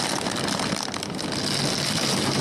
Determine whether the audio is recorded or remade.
recorded